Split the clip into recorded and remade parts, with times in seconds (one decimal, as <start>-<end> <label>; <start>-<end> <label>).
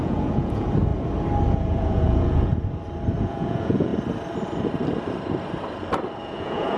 0.0-0.9 remade; 0.9-1.5 recorded; 1.5-2.5 remade; 2.5-3.2 recorded; 3.2-3.9 remade; 3.9-6.2 recorded; 6.2-6.8 remade